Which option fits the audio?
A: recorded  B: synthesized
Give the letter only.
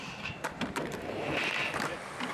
B